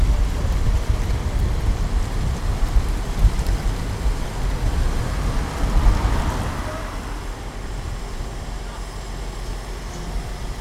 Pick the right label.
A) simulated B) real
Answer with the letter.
B